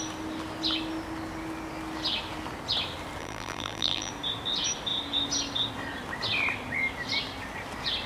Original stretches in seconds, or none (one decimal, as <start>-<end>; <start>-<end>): 0.0-3.2; 4.1-8.1